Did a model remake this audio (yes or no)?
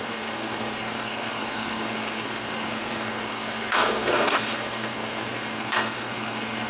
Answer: yes